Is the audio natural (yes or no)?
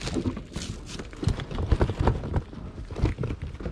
yes